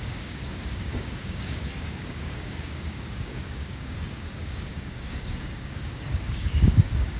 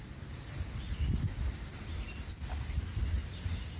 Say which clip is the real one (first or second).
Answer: second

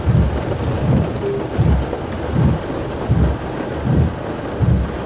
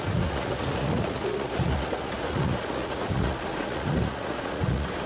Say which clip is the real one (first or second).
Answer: first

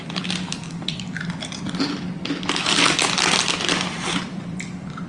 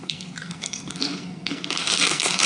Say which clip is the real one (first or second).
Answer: first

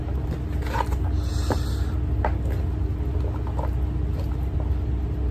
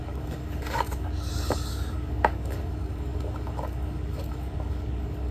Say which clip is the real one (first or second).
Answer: first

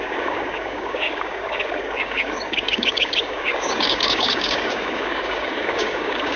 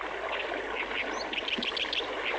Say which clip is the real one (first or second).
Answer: second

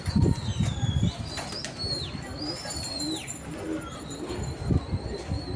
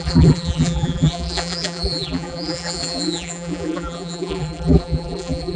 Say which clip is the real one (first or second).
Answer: first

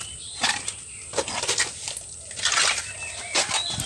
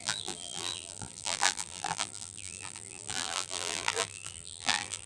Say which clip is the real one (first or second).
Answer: first